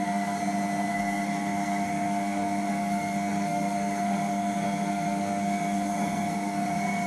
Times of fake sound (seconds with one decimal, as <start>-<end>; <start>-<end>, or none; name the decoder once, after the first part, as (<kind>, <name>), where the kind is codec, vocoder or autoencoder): 0.0-0.4 (codec, SNAC); 0.9-7.1